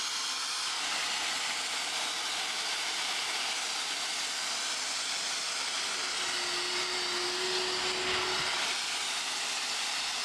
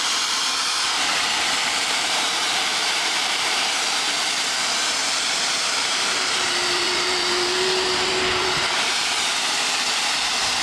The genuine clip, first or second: first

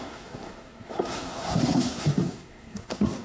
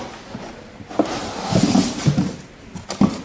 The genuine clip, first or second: second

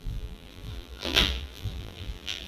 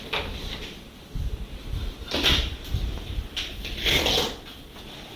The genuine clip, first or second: second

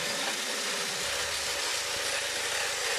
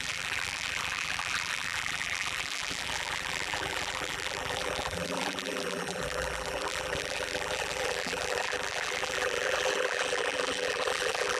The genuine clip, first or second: first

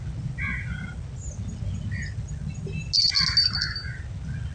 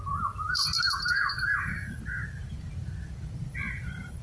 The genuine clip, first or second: first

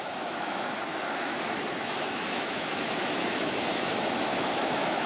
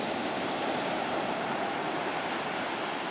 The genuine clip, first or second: second